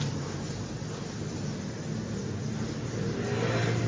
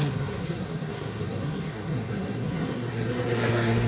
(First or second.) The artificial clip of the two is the second